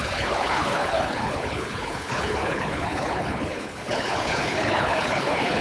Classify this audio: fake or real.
fake